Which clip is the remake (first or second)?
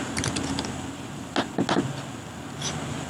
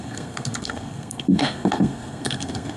second